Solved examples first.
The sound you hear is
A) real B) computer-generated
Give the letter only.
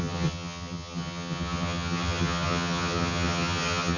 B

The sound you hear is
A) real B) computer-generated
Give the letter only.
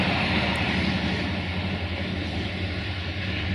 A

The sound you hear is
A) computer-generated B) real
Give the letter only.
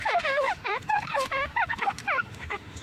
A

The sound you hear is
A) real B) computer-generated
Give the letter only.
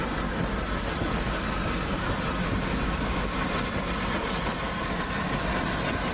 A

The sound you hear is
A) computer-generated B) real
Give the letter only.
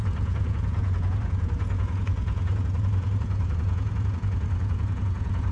A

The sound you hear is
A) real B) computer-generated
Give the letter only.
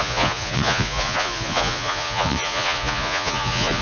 B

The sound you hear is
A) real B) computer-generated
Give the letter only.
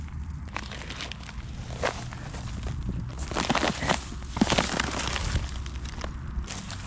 A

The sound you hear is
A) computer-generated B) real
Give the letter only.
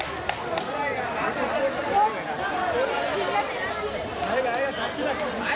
B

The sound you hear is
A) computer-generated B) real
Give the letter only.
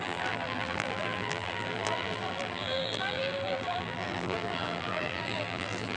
A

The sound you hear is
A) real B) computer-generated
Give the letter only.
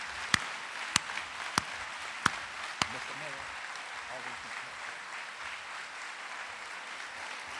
A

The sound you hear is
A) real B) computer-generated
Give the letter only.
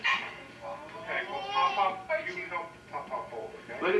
A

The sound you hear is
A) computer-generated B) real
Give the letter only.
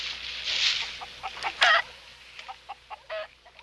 B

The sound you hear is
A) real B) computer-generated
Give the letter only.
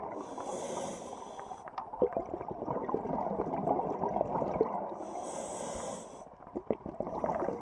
A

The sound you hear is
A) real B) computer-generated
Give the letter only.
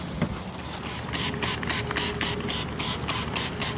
A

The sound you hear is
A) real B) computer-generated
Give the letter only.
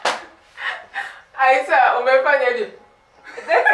A